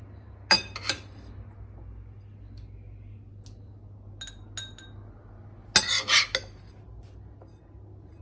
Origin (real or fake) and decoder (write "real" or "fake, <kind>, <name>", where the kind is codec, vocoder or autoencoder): real